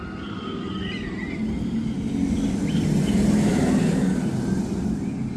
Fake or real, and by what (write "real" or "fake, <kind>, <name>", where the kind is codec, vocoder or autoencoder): real